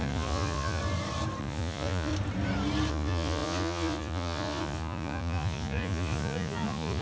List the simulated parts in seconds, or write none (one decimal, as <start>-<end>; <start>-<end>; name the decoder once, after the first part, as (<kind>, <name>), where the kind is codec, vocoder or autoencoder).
0.0-0.8 (vocoder, Vocos); 1.4-2.1; 2.9-7.0

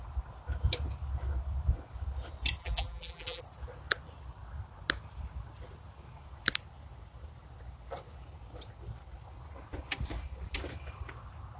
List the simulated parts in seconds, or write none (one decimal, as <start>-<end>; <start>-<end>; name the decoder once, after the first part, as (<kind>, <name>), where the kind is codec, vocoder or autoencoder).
2.6-3.4 (vocoder, BigVGAN v2)

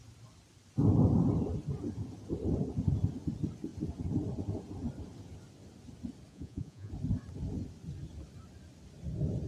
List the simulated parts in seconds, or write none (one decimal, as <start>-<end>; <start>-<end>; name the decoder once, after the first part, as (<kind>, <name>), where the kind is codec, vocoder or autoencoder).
6.3-6.9 (vocoder, Vocos)

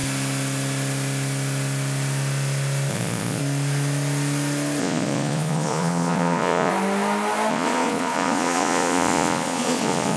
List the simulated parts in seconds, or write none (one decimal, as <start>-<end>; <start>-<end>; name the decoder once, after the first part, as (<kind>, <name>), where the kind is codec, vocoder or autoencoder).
2.9-3.4 (vocoder, Vocos); 4.8-6.7; 7.5-10.2

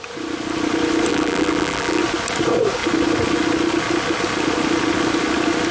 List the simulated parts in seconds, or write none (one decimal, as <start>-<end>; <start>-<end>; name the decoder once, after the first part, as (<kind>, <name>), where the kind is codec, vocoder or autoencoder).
1.1-2.0 (vocoder, BigVGAN v2)

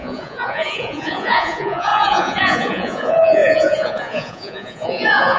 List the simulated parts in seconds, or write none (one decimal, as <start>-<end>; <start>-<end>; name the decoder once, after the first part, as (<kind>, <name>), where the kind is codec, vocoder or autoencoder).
0.0-5.4 (vocoder, Vocos)

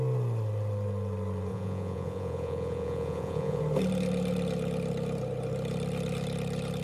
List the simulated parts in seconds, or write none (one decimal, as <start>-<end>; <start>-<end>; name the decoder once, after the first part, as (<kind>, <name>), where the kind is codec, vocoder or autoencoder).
1.5-3.6 (vocoder, Vocos)

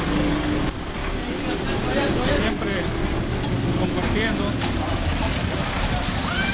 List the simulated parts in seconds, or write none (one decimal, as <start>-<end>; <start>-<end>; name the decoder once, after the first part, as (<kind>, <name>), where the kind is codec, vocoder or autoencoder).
none